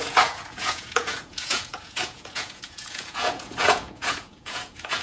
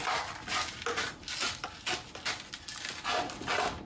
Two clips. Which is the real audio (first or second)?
second